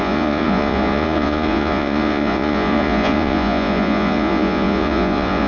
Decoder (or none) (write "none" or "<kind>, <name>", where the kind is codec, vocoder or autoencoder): vocoder, Vocos